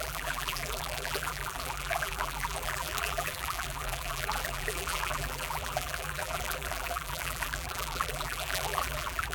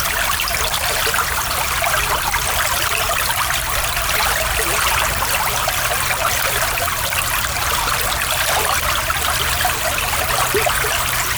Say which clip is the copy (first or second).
first